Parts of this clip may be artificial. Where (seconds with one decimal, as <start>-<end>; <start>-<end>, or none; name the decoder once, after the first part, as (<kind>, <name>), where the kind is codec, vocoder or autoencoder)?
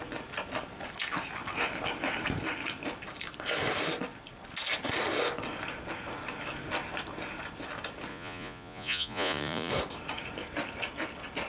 8.1-9.7 (vocoder, Vocos)